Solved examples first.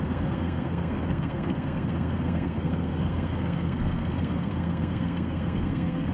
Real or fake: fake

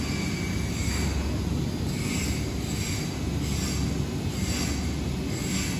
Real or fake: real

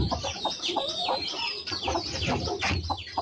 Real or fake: fake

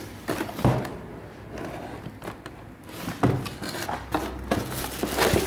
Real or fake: real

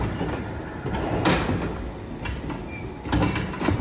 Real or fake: real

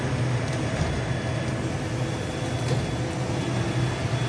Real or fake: real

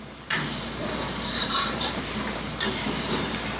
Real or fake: fake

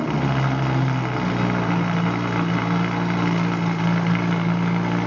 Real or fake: real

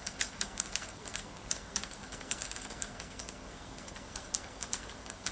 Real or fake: fake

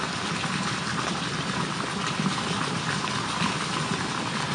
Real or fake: real